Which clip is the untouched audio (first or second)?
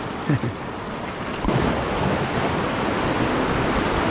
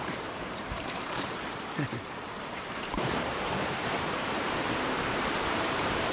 first